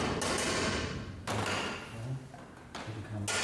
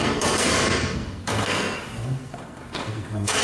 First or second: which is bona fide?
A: first